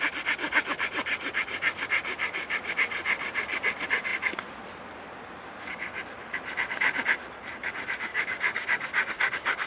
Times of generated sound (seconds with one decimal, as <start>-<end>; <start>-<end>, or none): 8.1-9.7